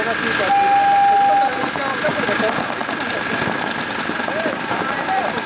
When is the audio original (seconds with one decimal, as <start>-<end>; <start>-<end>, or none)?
0.0-2.1